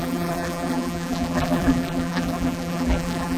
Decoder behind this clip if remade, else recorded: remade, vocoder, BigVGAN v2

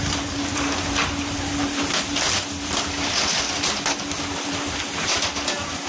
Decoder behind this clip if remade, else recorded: recorded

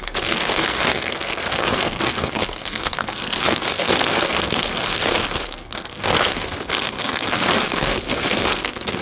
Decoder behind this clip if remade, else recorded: remade, codec, SNAC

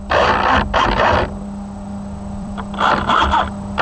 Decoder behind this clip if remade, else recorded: remade, vocoder, BigVGAN v2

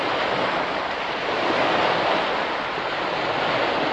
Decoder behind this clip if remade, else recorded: recorded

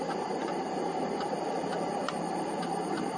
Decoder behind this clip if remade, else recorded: remade, vocoder, BigVGAN v2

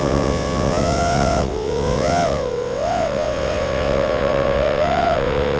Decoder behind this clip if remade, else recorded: remade, vocoder, WaveNeXt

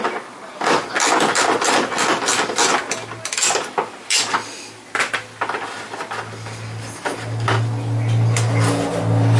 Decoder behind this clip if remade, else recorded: recorded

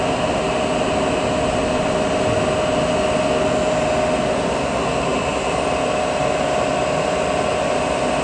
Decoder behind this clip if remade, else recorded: recorded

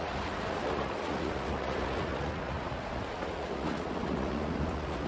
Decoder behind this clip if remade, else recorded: remade, vocoder, Vocos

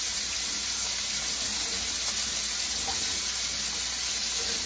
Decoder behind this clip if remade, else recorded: recorded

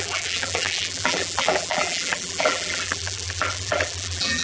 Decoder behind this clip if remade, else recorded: remade, vocoder, BigVGAN v2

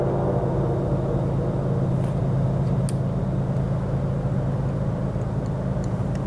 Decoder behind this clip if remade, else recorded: recorded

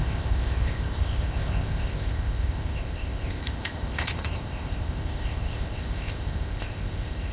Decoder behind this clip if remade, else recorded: remade, codec, ZipCodec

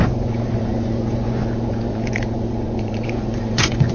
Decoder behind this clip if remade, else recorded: remade, vocoder, Vocos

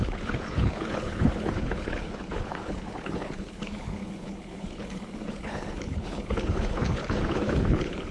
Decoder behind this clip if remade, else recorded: remade, codec, HILCodec